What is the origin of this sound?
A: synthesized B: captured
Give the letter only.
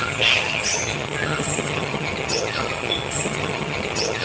A